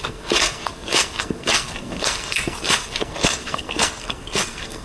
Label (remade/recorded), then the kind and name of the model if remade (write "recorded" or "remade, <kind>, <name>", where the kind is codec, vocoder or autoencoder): remade, codec, SNAC